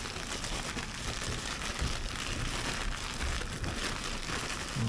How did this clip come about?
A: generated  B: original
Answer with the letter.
B